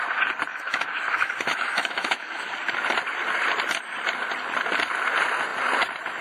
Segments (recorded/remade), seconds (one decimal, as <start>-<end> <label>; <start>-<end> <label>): 0.0-0.5 recorded; 0.5-2.5 remade; 2.5-6.2 recorded